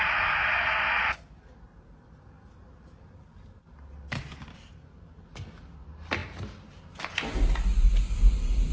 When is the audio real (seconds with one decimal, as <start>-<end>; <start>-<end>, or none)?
0.0-8.7